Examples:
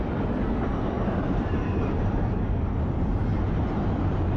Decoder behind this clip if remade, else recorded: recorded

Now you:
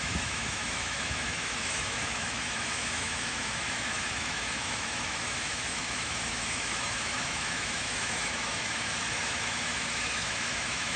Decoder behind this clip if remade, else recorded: remade, autoencoder, DAC-VAE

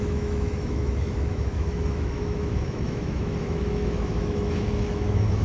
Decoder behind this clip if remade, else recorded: remade, autoencoder, DAC-VAE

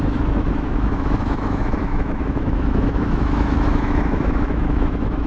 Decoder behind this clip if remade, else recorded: remade, autoencoder, DAC-VAE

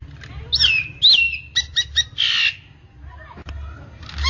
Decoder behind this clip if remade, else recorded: recorded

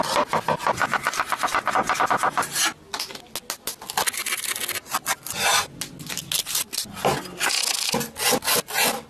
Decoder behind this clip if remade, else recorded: recorded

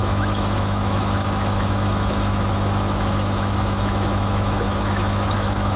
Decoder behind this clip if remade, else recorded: remade, autoencoder, DAC-VAE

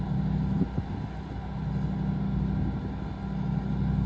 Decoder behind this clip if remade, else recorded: recorded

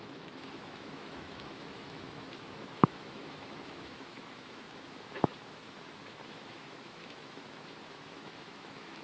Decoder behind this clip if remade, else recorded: remade, autoencoder, DAC-VAE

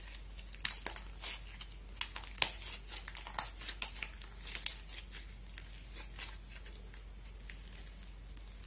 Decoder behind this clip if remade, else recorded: recorded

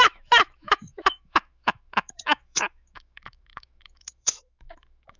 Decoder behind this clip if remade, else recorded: remade, autoencoder, DAC-VAE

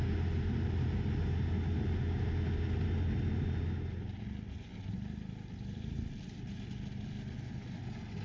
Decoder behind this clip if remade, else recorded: recorded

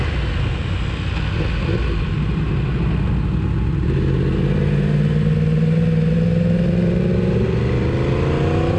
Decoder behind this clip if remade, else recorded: recorded